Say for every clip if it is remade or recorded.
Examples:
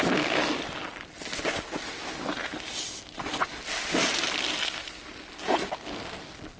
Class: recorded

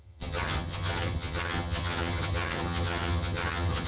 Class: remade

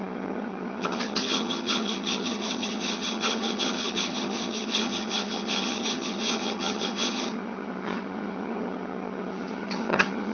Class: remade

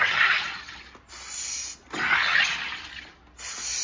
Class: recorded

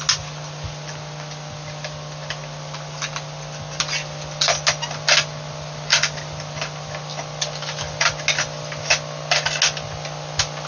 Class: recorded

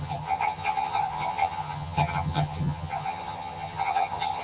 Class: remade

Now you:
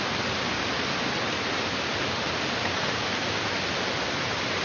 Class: recorded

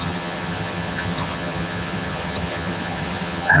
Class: remade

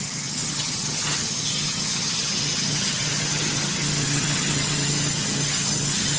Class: remade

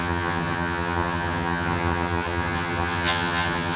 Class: remade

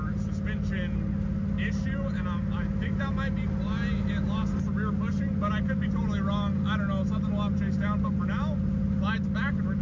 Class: recorded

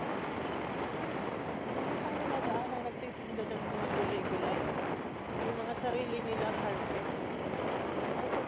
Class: recorded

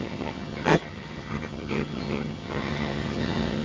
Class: remade